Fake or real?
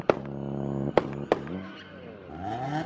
real